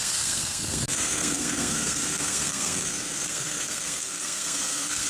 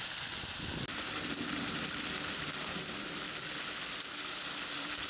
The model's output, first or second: first